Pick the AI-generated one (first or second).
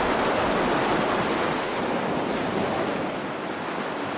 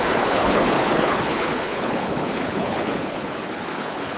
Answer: second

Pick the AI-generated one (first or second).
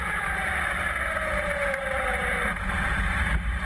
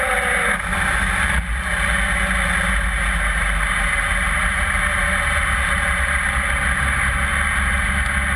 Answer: first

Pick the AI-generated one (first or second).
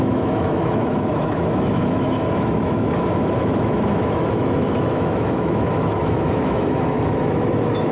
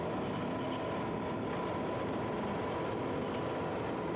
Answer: first